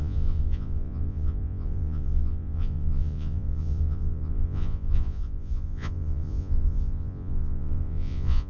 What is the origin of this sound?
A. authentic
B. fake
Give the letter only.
B